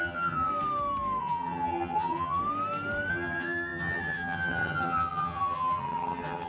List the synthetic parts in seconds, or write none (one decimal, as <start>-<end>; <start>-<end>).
0.0-0.5; 1.2-2.4; 3.1-6.5